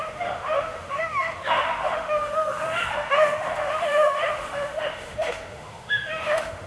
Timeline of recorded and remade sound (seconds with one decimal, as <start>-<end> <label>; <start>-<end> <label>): 0.0-6.7 remade